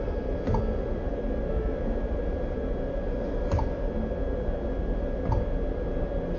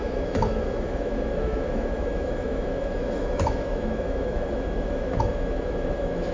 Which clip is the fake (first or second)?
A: second